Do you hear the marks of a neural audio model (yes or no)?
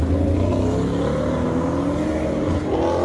no